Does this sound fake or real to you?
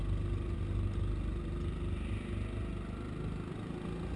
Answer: real